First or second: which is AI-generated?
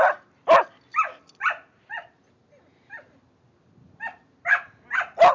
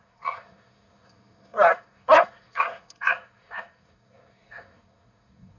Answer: second